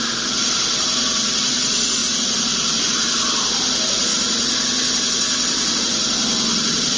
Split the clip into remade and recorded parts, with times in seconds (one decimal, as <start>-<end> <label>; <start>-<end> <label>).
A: 0.0-7.0 recorded